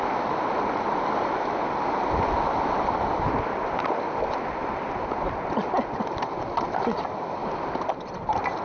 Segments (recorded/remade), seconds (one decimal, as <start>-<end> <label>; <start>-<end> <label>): 0.0-8.6 recorded